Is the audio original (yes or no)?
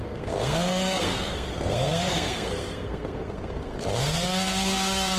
no